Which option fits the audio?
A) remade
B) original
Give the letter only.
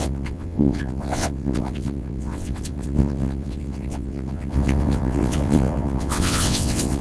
A